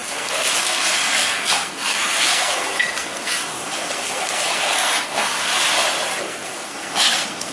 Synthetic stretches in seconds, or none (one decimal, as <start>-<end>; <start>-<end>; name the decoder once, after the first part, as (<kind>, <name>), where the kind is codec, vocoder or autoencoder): 0.0-5.5 (codec, SNAC); 6.2-7.5